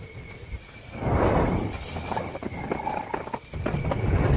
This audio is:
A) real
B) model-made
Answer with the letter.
A